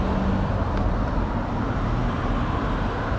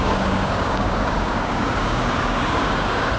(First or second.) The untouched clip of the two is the first